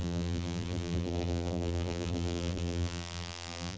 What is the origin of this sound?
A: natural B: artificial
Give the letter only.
B